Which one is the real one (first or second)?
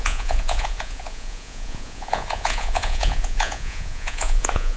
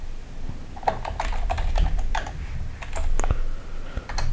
second